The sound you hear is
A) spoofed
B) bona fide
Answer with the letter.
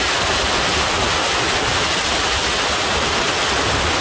B